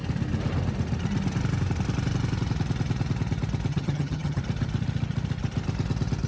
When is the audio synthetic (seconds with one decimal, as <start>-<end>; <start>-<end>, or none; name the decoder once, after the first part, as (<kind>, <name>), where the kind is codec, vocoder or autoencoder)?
3.7-4.4 (vocoder, HiFi-GAN)